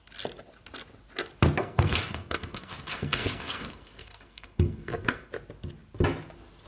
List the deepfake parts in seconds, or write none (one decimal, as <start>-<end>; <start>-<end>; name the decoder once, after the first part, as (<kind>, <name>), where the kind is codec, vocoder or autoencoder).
1.6-5.3 (codec, SNAC)